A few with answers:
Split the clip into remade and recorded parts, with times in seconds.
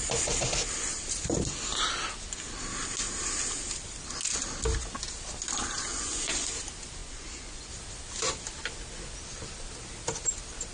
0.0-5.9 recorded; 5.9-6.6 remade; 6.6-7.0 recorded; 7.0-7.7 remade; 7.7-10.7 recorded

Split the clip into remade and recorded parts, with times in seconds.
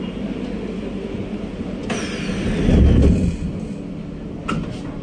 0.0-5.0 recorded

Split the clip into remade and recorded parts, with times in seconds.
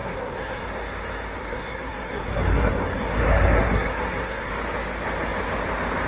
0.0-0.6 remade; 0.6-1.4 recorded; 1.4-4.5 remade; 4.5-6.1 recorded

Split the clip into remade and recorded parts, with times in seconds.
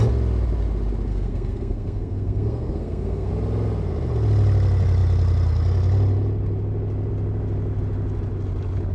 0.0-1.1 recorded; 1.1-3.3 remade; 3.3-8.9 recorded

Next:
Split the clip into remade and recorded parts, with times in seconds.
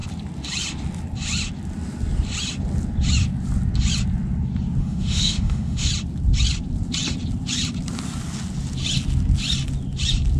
0.0-4.8 recorded; 4.8-5.9 remade; 5.9-10.4 recorded